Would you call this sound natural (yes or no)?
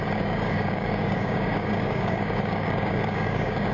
no